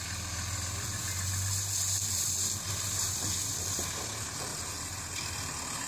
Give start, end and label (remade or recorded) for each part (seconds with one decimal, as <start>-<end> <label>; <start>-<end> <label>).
0.0-1.0 remade; 1.0-4.0 recorded; 4.0-4.5 remade; 4.5-5.0 recorded; 5.0-5.9 remade